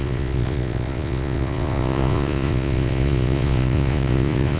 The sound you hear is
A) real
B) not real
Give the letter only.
B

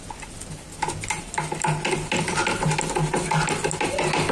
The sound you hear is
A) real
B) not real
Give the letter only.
A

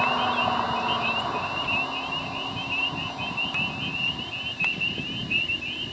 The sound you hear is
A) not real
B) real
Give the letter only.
B